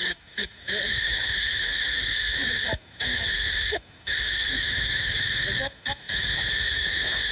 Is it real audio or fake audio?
fake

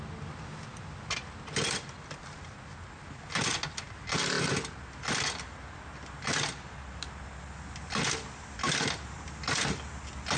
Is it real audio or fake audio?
real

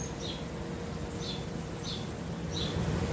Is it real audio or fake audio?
real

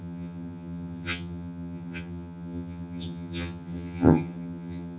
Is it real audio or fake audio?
fake